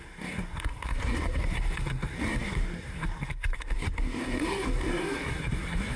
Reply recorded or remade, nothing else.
remade